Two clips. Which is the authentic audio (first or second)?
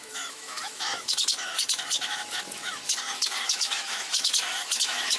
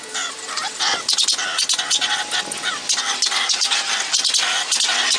second